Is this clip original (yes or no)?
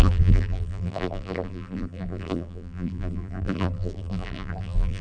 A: no